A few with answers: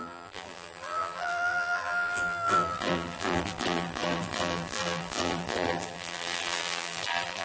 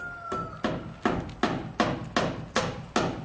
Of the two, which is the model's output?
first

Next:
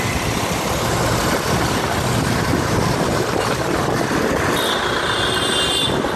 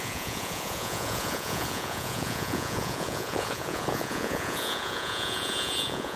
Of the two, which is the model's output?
second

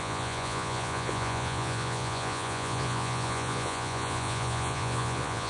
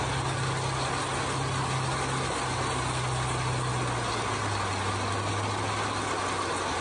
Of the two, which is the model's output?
first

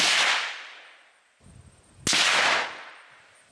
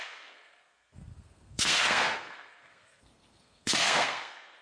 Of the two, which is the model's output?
second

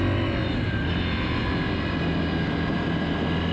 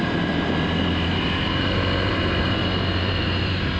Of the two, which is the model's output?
second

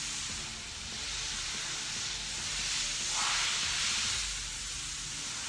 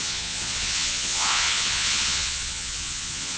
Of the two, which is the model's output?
second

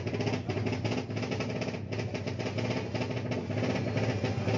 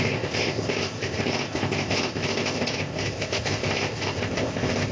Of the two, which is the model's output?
second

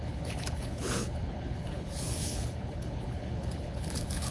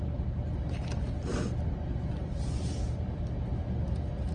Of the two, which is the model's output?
first